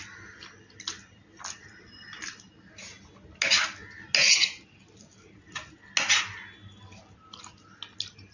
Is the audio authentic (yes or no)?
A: yes